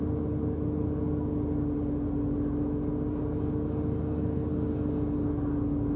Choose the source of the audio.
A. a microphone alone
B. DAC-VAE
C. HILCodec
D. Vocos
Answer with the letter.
A